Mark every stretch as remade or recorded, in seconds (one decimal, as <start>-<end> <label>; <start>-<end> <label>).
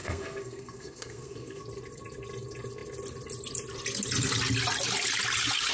0.0-1.6 remade; 1.6-5.7 recorded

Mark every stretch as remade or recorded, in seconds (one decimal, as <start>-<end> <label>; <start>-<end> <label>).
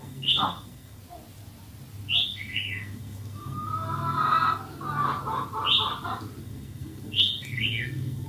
0.0-1.0 remade; 1.0-2.2 recorded; 2.2-3.7 remade; 3.7-6.4 recorded; 6.4-8.3 remade